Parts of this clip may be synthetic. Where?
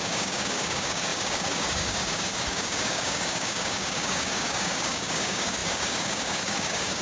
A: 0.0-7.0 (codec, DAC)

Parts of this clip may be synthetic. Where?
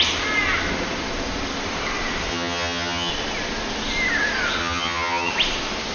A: 2.3-3.1 (vocoder, HiFi-GAN); 4.6-5.3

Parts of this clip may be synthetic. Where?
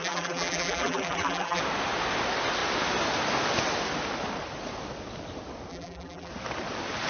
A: 0.0-1.6 (vocoder, BigVGAN v2); 5.7-6.3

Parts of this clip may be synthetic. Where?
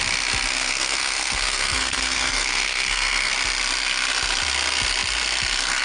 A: 0.5-3.3 (codec, SNAC)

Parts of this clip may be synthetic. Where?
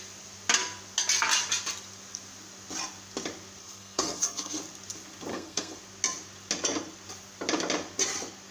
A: 3.6-4.6 (codec, SNAC); 5.3-5.8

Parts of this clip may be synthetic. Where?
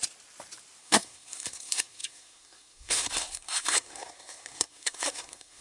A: 0.8-5.6 (codec, SNAC)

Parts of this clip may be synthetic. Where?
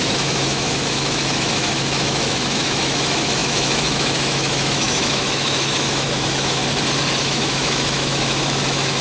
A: 0.0-6.6 (autoencoder, DAC-VAE); 7.2-9.0